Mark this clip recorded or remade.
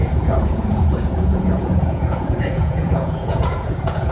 remade